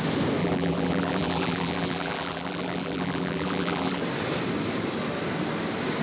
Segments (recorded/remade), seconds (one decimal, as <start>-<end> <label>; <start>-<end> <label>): 0.0-0.4 recorded; 0.4-4.0 remade; 4.0-6.0 recorded